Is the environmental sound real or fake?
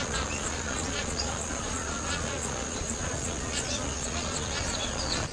fake